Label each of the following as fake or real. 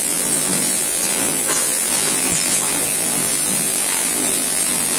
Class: fake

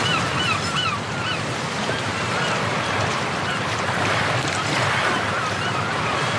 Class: fake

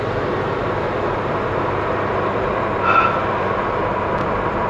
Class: fake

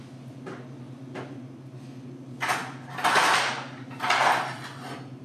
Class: real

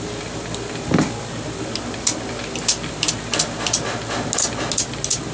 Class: real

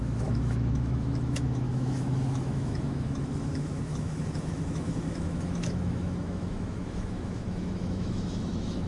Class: fake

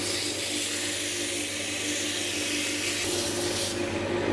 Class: real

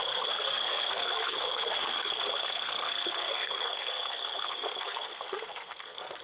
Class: fake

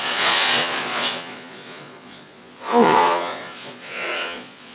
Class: fake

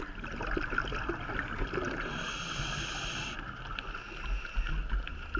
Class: real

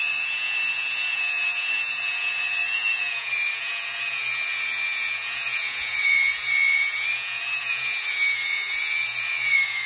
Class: fake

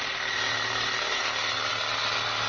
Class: real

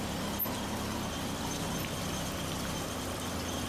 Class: real